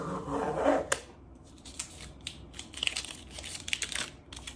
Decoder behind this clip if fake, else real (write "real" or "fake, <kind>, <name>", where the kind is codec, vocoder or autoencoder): real